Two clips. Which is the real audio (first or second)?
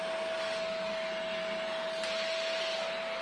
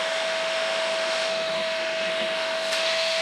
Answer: first